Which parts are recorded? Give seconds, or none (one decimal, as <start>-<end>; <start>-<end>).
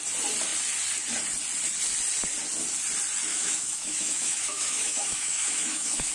0.0-3.3